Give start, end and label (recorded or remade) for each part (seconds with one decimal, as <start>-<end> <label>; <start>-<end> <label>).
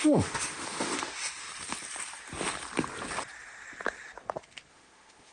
0.0-1.5 remade; 1.5-4.7 recorded; 4.7-5.3 remade